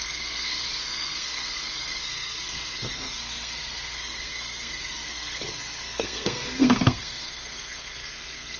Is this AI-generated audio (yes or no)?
yes